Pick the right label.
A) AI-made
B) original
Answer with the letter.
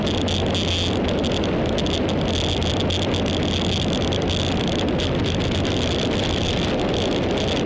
B